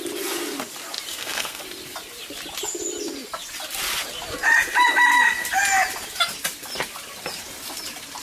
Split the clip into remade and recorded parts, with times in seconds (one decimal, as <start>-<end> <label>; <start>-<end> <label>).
0.0-1.1 recorded; 1.1-1.6 remade; 1.6-8.2 recorded